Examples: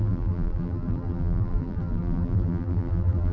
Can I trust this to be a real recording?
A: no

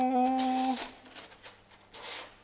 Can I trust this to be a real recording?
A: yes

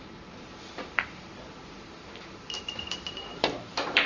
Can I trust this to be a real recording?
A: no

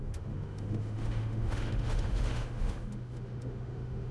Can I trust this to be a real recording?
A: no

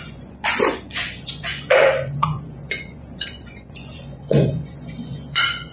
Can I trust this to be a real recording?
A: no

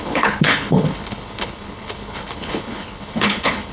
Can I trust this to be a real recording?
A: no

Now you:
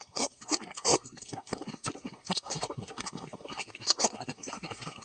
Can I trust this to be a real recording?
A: no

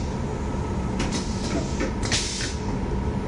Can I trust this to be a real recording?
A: yes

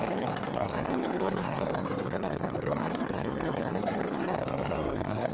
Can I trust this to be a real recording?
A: no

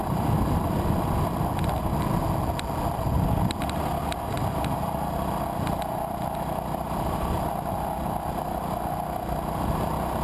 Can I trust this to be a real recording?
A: yes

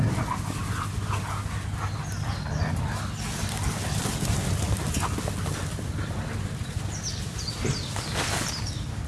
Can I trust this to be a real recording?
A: yes